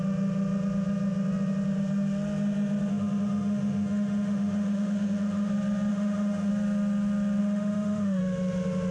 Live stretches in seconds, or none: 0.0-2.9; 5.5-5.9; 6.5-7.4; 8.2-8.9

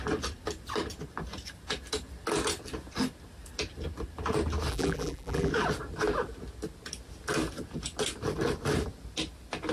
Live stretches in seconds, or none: 0.0-4.7; 5.5-9.7

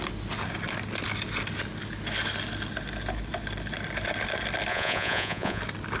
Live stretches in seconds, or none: 0.0-4.7; 5.6-6.0

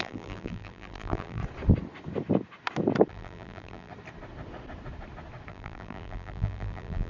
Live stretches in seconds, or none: 1.4-3.1; 3.9-5.5